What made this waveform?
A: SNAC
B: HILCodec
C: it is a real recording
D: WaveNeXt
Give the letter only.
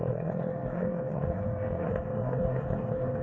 A